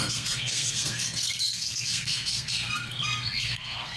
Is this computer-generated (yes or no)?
yes